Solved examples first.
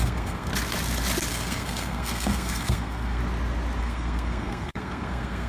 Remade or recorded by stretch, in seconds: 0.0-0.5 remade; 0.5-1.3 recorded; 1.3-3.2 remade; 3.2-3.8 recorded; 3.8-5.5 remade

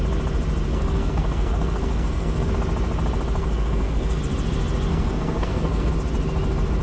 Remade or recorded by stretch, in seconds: 0.0-0.7 recorded; 0.7-2.5 remade; 2.5-3.4 recorded; 3.4-4.2 remade; 4.2-4.9 recorded; 4.9-5.9 remade; 5.9-6.8 recorded

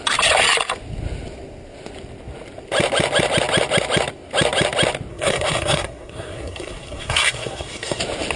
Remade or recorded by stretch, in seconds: 0.0-5.1 recorded; 5.1-8.0 remade; 8.0-8.4 recorded

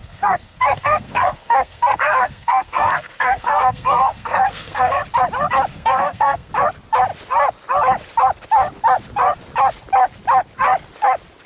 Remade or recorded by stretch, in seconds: 0.0-5.0 remade; 5.0-5.7 recorded; 5.7-6.5 remade; 6.5-11.5 recorded

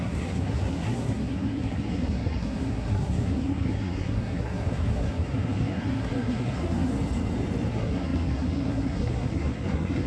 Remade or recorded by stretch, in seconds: 0.0-6.9 remade; 6.9-7.7 recorded; 7.7-10.1 remade

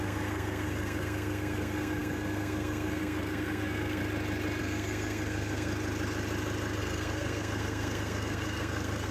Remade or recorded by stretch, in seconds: 0.0-4.0 remade; 4.0-4.6 recorded; 4.6-5.7 remade; 5.7-6.8 recorded; 6.8-9.1 remade

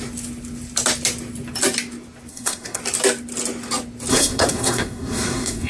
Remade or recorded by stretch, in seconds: 0.0-2.3 recorded; 2.3-2.8 remade; 2.8-4.1 recorded; 4.1-5.7 remade